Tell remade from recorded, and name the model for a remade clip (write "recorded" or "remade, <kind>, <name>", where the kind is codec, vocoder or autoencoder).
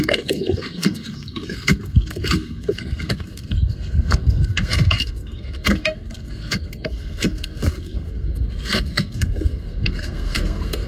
remade, codec, SNAC